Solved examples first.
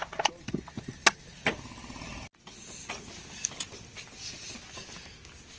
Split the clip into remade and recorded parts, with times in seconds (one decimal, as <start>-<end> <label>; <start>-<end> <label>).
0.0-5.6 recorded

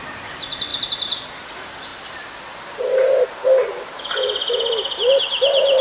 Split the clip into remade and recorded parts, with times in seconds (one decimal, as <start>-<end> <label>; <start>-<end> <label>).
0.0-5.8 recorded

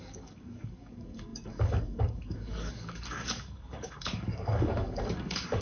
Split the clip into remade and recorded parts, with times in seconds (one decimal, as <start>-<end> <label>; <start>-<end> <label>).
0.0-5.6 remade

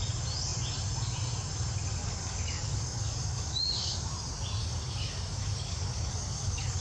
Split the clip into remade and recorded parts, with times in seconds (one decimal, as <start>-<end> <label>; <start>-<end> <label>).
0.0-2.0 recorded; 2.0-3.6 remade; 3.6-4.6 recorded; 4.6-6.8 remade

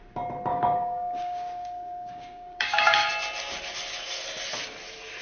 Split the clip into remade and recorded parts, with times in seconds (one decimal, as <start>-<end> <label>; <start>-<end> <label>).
0.0-0.5 recorded; 0.5-3.1 remade; 3.1-5.2 recorded

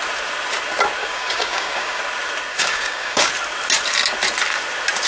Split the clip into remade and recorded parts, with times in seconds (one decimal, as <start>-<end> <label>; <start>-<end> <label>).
0.0-1.0 recorded; 1.0-2.0 remade; 2.0-2.5 recorded; 2.5-3.3 remade; 3.3-5.1 recorded